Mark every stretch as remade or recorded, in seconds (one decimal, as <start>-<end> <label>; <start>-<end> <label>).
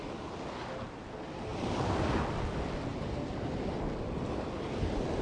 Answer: 0.0-5.2 recorded